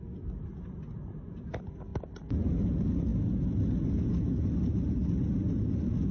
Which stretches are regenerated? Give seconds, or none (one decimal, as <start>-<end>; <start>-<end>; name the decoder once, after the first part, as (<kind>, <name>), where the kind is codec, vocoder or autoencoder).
none